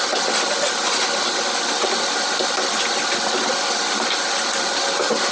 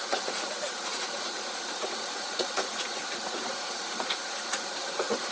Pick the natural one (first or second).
first